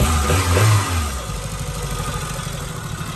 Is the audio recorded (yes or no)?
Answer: yes